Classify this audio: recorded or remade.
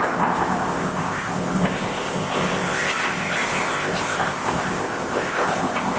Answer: remade